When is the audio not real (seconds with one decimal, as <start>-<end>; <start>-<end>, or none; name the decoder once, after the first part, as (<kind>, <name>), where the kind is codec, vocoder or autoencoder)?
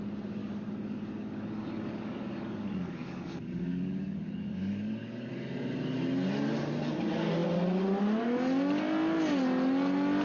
0.4-5.3 (codec, DAC)